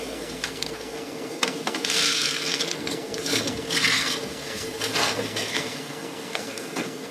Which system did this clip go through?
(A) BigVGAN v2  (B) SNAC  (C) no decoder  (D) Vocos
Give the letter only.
B